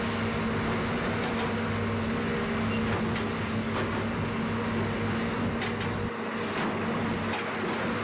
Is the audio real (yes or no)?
yes